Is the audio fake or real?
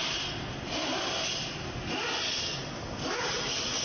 real